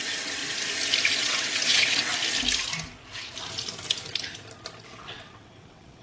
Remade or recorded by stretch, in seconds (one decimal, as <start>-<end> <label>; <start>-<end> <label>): 0.0-0.4 remade; 0.4-1.2 recorded; 1.2-2.1 remade; 2.1-4.9 recorded; 4.9-6.0 remade